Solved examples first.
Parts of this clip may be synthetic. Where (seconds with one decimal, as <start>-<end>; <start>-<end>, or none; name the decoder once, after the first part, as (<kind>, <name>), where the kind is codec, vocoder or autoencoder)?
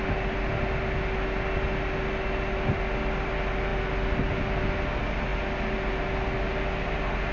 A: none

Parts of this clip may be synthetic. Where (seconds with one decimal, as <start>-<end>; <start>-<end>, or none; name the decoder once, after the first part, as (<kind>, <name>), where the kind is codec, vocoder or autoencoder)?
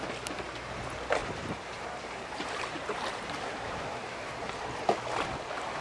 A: 1.2-4.7 (vocoder, BigVGAN v2)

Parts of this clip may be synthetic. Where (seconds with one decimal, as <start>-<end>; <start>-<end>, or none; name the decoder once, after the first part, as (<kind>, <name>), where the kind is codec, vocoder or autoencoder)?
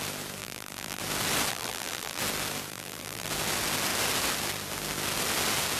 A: 0.4-1.0 (vocoder, BigVGAN v2); 1.5-2.2; 2.7-3.3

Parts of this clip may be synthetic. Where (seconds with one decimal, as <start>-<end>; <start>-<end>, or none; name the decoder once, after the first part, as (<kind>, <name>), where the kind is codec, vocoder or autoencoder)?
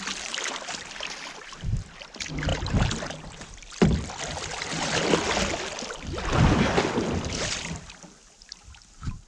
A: none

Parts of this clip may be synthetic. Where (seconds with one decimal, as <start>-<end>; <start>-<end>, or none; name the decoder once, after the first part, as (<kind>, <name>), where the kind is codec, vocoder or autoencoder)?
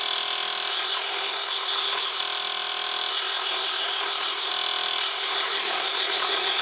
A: 0.7-2.2 (codec, SNAC); 3.1-4.5; 5.0-6.6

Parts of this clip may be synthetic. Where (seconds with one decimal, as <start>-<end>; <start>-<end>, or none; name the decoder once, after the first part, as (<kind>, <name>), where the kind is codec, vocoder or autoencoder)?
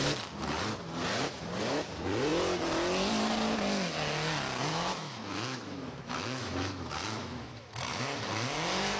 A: 4.7-8.0 (autoencoder, DAC-VAE)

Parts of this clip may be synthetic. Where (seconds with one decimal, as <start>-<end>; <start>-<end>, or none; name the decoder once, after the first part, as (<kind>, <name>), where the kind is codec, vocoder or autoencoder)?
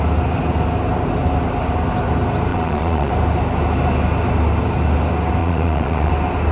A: 2.5-3.1 (vocoder, Vocos); 5.4-6.1